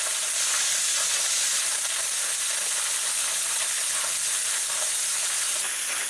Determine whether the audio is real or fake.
real